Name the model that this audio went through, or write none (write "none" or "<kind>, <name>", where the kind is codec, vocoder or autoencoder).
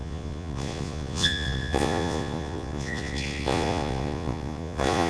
vocoder, Vocos